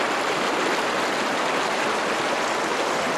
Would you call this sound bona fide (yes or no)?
yes